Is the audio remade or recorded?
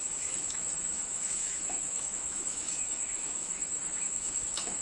remade